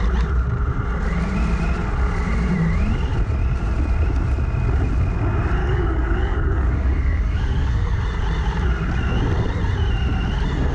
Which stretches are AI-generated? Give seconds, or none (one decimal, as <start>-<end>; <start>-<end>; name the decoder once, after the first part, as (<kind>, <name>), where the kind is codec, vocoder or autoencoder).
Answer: 5.6-8.0 (codec, DAC)